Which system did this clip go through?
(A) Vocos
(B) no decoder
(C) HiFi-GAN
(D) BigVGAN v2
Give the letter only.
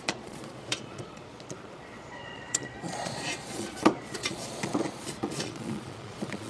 A